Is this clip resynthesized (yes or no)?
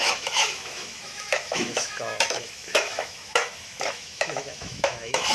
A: yes